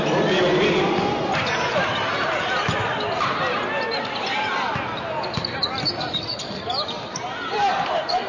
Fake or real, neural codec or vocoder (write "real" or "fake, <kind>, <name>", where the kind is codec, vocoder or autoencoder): real